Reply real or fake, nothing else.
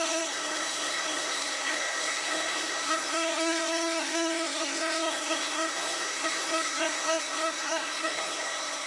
fake